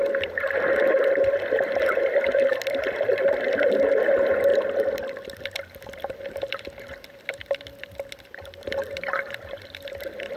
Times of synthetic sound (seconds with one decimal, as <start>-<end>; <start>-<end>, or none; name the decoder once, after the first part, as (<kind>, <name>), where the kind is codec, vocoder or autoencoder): none